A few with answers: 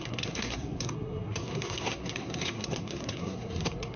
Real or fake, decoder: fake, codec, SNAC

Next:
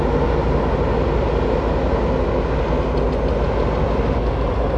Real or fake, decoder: real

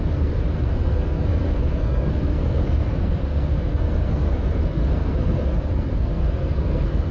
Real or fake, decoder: fake, codec, SNAC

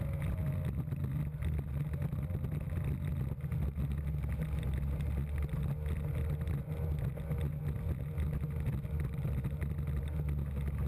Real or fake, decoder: real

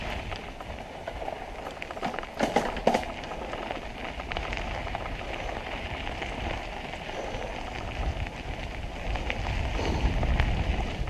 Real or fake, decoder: real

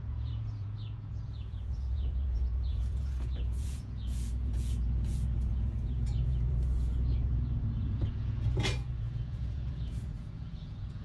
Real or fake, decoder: fake, vocoder, Vocos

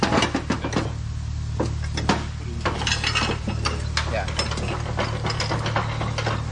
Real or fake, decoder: real